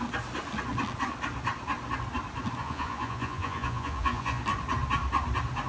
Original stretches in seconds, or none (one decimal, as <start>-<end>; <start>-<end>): 0.0-2.6; 4.4-5.7

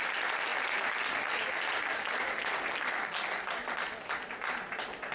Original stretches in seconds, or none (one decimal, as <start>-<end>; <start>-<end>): 0.5-3.6

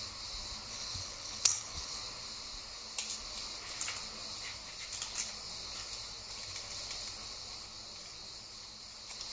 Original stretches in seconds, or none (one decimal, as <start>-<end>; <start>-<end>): 0.0-0.7; 2.0-9.3

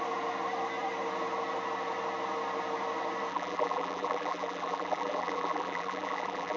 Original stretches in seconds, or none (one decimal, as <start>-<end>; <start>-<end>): 0.0-3.3

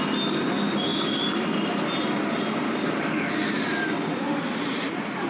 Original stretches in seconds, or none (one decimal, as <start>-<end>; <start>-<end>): 0.0-5.3

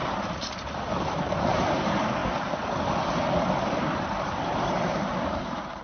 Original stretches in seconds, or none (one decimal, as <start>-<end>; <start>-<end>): 2.2-3.4

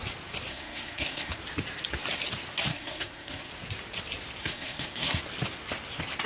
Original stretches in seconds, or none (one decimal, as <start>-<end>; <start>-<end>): 0.0-0.5; 1.3-2.7; 3.5-4.4; 5.2-6.3